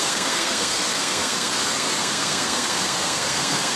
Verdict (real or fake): fake